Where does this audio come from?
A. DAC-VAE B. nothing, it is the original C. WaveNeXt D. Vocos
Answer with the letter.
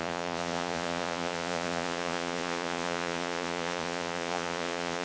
D